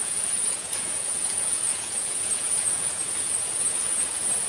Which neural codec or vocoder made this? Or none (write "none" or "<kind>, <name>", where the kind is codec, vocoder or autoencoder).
vocoder, Vocos